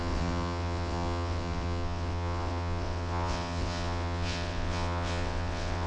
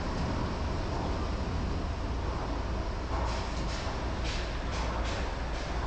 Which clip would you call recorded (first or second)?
second